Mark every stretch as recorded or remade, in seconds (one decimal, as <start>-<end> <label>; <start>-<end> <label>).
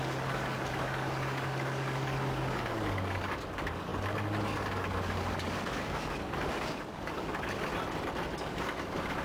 0.0-7.7 remade; 7.7-8.4 recorded; 8.4-9.2 remade